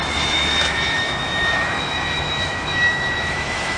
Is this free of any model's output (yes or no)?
no